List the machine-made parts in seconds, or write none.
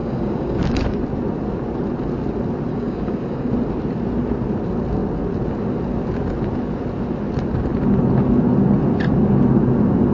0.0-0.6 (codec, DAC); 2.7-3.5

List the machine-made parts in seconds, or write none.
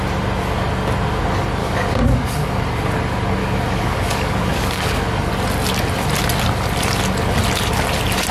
1.6-2.6 (codec, DAC); 3.4-5.3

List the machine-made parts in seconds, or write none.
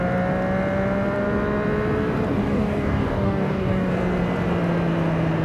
2.4-3.9 (codec, DAC)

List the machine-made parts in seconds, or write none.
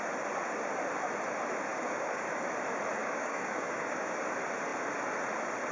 1.7-2.4 (codec, DAC); 3.0-4.2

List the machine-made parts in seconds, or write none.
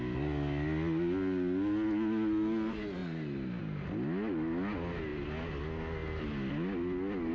none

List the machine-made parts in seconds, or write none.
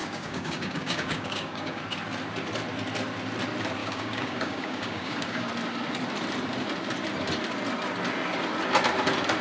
0.0-1.8 (codec, DAC); 3.8-5.5